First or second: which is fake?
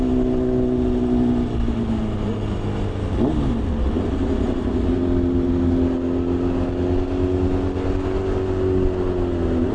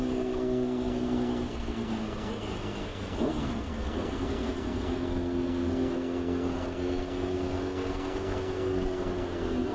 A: second